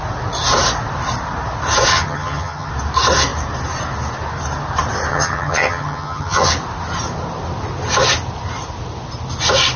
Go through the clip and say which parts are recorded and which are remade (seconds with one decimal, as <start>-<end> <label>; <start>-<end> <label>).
0.0-1.9 recorded; 1.9-2.7 remade; 2.7-5.1 recorded; 5.1-6.5 remade; 6.5-9.8 recorded